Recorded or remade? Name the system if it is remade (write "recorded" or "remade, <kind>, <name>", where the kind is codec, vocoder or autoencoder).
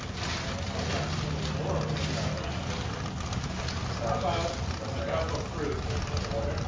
recorded